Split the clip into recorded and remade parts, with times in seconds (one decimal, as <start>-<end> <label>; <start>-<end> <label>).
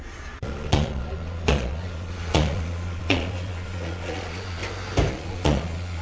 0.0-4.6 remade; 4.6-5.1 recorded; 5.1-6.0 remade